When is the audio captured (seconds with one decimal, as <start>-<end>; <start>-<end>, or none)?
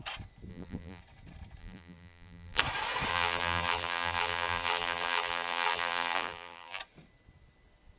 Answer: 0.0-0.5; 1.0-1.6; 2.6-3.1; 6.8-8.0